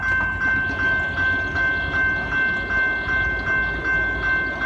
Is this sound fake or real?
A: real